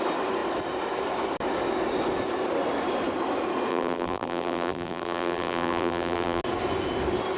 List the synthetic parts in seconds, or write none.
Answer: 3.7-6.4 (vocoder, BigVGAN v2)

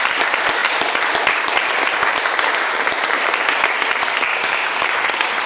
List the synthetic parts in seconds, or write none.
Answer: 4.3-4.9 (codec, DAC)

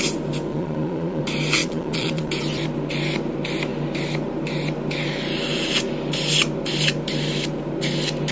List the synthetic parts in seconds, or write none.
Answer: 0.5-1.2 (vocoder, Vocos); 1.6-2.3